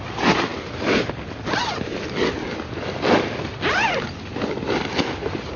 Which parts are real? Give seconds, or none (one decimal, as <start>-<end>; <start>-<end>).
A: 0.0-5.6